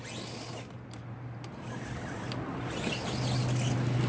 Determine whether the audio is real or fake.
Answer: real